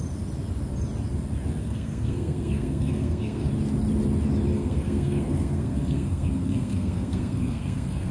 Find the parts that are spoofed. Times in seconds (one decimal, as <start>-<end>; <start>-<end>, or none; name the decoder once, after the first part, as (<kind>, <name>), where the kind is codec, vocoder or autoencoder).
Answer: 1.6-3.5 (codec, SNAC); 4.5-8.1